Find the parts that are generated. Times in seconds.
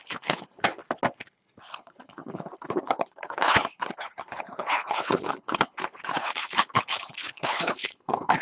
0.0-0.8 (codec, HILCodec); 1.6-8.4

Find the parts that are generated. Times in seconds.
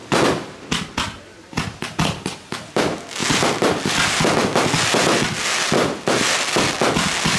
none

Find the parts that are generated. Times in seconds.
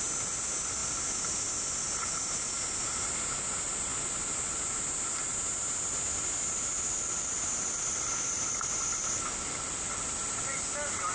none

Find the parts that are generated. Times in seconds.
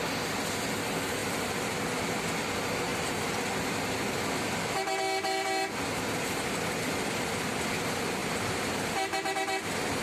1.2-1.7 (vocoder, BigVGAN v2); 2.9-4.4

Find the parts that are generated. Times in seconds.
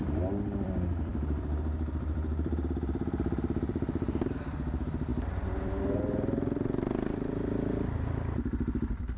0.0-9.2 (vocoder, BigVGAN v2)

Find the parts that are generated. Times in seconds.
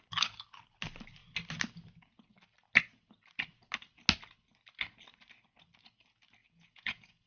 6.4-7.3 (vocoder, Vocos)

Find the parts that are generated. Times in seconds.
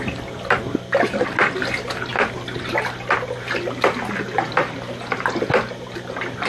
none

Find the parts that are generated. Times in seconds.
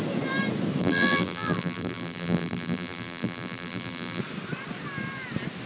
0.8-4.2 (vocoder, BigVGAN v2)